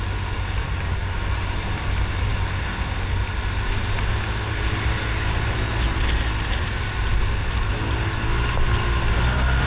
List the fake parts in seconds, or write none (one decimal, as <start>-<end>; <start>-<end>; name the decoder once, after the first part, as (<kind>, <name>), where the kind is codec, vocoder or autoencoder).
none